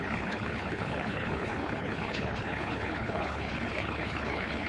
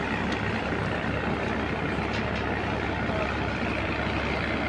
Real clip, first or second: second